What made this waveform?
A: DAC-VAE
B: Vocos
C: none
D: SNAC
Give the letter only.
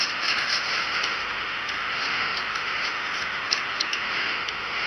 A